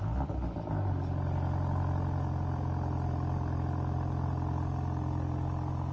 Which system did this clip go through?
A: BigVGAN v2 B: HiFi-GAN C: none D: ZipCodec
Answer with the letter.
C